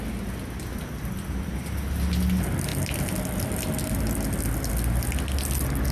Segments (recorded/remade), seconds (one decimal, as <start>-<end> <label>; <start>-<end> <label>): 0.0-5.9 recorded